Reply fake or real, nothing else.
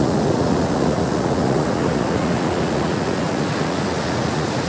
fake